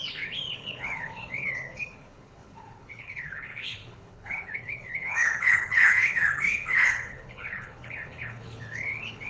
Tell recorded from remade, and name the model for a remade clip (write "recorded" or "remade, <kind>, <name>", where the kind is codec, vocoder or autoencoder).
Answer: remade, codec, HILCodec